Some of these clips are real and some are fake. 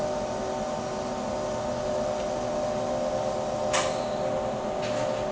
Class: real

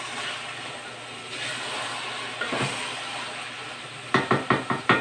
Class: real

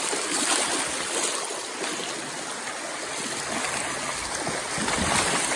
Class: real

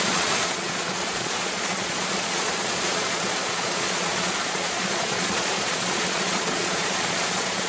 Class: fake